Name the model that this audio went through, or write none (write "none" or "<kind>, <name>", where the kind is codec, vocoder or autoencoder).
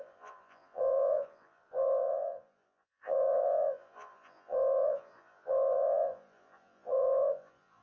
vocoder, Vocos